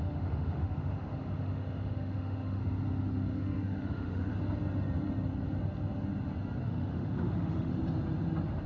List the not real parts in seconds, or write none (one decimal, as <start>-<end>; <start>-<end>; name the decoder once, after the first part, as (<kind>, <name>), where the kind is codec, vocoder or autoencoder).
0.0-2.6 (autoencoder, DAC-VAE); 3.1-4.3; 6.6-7.7